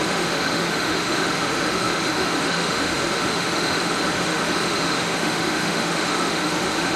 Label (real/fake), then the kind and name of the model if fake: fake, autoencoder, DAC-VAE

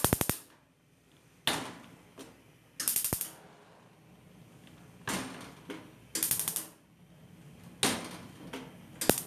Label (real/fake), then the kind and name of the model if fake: real